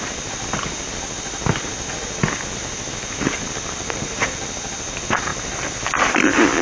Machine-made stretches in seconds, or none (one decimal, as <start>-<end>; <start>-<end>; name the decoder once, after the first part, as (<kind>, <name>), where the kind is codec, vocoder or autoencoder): 5.3-6.6 (vocoder, BigVGAN v2)